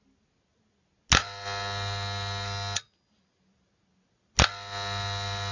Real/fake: real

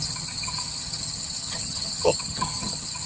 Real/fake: fake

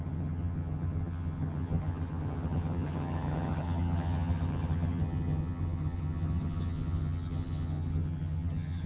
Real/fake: fake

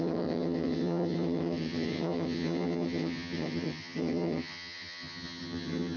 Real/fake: fake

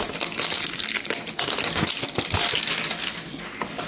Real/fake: real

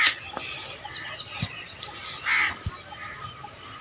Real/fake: real